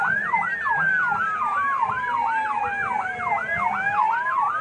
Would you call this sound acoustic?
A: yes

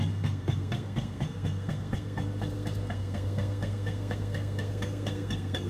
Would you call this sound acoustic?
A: no